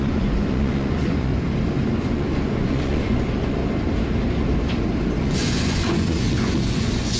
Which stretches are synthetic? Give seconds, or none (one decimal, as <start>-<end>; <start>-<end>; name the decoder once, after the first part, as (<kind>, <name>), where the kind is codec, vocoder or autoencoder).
0.0-1.3 (vocoder, Vocos); 2.0-3.6; 5.2-7.2